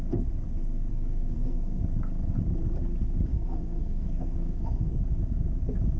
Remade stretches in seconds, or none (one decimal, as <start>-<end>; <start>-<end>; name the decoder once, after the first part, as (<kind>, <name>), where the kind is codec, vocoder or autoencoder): 0.9-1.8 (codec, SNAC); 3.3-5.0